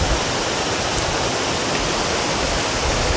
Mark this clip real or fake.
real